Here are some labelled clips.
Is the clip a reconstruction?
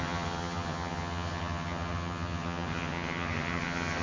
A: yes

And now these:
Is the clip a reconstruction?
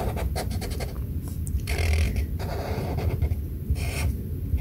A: no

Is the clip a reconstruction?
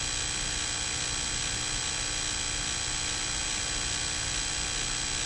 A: no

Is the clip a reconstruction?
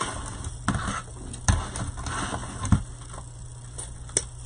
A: no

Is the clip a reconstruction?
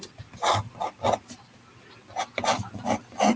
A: no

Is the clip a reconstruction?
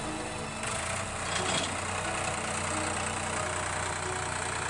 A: no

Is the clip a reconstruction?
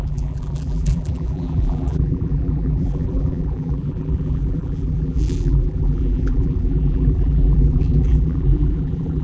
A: yes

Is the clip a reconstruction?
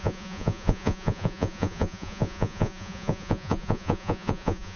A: yes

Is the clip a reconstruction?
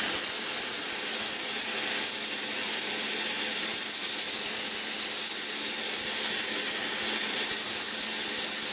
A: no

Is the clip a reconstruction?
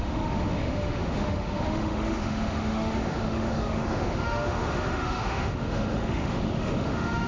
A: yes